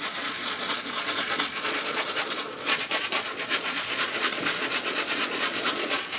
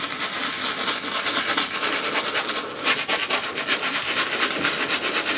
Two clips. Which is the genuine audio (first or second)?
second